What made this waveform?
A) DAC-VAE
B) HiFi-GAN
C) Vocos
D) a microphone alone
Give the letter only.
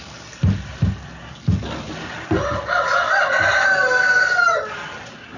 D